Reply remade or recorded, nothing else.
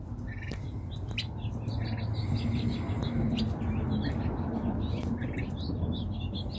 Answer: recorded